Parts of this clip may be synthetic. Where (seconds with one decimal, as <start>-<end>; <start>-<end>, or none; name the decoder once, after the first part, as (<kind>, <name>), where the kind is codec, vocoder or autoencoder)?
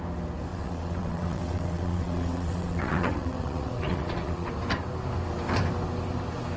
0.5-4.5 (vocoder, WaveNeXt)